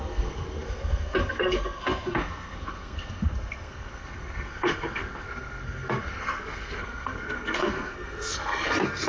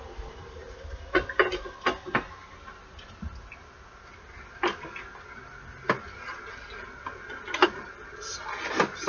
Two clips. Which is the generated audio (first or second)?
first